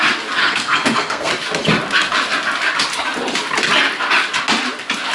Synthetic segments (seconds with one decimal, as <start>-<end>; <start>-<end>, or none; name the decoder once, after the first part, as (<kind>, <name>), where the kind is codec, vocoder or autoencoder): 0.4-1.3 (codec, SNAC)